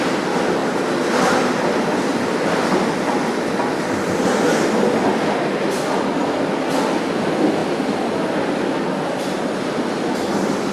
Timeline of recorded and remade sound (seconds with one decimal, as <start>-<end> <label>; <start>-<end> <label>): 0.0-10.7 recorded